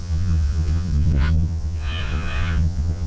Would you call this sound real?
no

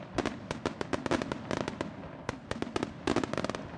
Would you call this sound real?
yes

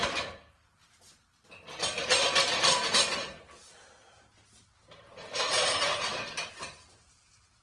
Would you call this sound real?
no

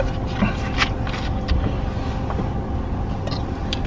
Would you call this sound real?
yes